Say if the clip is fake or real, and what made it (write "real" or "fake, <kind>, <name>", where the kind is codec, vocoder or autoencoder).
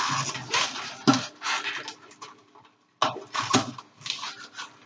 real